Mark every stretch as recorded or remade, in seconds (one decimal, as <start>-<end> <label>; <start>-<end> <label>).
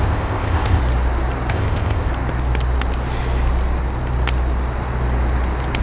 0.0-0.8 remade; 0.8-1.5 recorded; 1.5-2.1 remade; 2.1-5.8 recorded